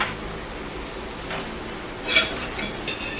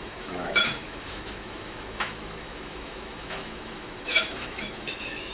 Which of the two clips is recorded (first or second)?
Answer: first